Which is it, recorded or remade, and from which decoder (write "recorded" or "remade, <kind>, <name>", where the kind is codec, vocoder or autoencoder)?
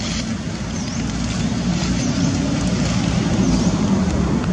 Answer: recorded